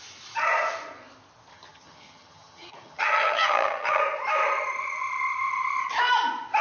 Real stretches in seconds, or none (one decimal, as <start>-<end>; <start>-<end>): 0.0-1.5; 4.0-6.6